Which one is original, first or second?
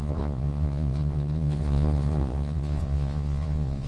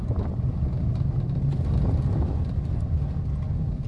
second